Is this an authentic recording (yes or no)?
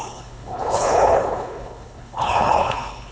no